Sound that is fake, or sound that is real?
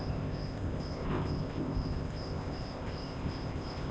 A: fake